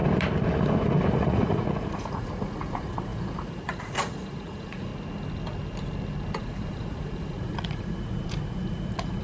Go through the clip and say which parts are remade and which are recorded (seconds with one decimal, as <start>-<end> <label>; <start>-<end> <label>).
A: 0.0-1.1 recorded; 1.1-4.9 remade; 4.9-6.4 recorded; 6.4-9.2 remade